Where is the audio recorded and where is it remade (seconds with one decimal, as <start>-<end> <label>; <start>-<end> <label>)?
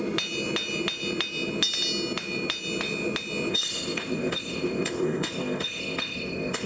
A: 0.0-3.5 recorded; 3.5-6.7 remade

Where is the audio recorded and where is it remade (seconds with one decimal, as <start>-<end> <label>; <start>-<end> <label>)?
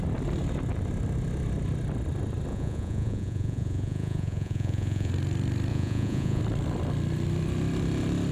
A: 0.0-2.5 recorded; 2.5-5.1 remade; 5.1-5.7 recorded; 5.7-6.4 remade; 6.4-8.3 recorded